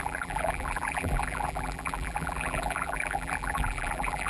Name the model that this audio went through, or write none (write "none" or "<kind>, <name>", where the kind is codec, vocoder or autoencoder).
vocoder, BigVGAN v2